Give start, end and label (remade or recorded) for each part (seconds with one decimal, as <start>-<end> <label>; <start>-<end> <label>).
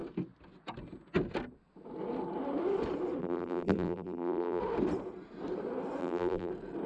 0.0-3.2 recorded; 3.2-4.6 remade; 4.6-6.0 recorded; 6.0-6.5 remade; 6.5-6.9 recorded